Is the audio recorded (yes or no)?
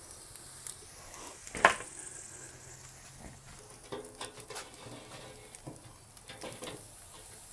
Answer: yes